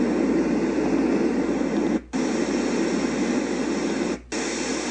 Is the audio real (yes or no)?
yes